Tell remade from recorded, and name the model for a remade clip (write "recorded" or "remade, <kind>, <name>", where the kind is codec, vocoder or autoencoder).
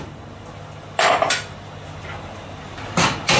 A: recorded